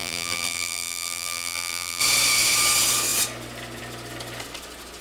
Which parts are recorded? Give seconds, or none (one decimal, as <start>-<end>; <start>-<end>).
2.0-5.0